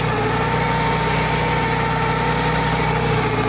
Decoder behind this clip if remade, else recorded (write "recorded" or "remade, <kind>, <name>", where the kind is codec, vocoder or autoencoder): recorded